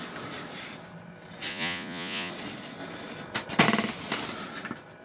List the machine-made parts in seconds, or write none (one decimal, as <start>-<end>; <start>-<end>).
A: 1.5-2.3